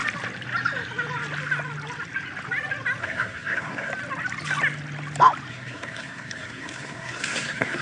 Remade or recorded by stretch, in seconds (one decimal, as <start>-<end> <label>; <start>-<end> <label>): 0.0-3.0 recorded; 3.0-3.9 remade; 3.9-5.5 recorded; 5.5-7.8 remade